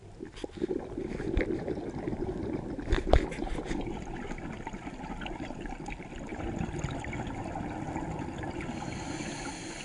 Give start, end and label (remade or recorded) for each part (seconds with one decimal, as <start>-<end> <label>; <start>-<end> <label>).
0.0-9.8 recorded